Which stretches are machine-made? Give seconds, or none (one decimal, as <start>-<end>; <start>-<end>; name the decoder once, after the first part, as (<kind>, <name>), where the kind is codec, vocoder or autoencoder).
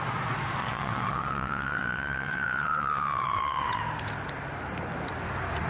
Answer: 0.6-3.8 (vocoder, WaveNeXt)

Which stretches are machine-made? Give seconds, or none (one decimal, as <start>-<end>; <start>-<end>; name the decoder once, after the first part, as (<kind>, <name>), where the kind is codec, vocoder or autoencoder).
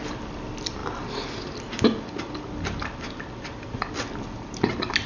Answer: none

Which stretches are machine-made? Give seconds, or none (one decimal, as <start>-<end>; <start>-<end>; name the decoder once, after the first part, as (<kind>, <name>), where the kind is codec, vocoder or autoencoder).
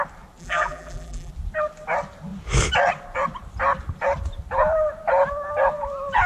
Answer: 0.4-1.3 (vocoder, BigVGAN v2)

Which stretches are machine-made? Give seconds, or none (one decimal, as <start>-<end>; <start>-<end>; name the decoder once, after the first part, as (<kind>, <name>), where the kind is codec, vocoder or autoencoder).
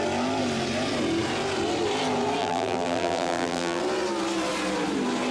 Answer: 2.4-3.8 (vocoder, BigVGAN v2)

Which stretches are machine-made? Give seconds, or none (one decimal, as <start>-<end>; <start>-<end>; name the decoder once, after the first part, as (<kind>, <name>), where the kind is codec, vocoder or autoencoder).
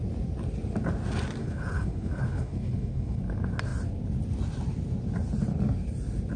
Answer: 1.4-3.2 (codec, HILCodec)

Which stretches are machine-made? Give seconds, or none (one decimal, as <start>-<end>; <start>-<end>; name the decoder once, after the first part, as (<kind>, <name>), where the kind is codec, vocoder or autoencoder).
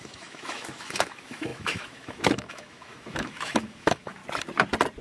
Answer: 0.0-4.2 (autoencoder, DAC-VAE)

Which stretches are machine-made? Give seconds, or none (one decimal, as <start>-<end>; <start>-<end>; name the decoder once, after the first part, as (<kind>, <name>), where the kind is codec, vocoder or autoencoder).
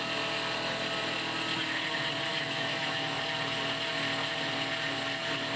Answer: 2.3-3.2 (autoencoder, DAC-VAE)